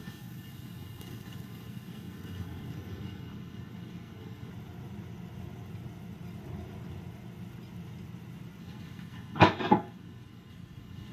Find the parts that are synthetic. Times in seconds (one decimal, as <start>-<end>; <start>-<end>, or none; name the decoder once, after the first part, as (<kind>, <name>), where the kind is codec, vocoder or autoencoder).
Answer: 0.0-4.5 (codec, SNAC); 8.6-11.1